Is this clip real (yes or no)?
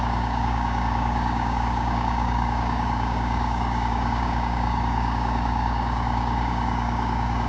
no